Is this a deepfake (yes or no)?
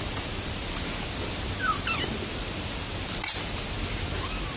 no